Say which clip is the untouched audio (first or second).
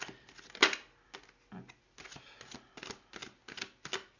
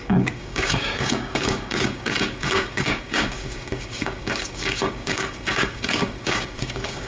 first